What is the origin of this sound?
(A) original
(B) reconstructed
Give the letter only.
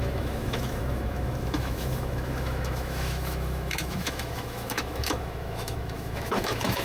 B